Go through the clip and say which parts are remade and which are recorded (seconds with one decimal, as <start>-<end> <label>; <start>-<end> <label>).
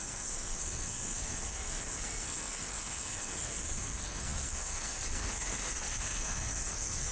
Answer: 0.0-7.1 remade